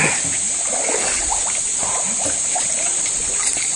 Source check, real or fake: real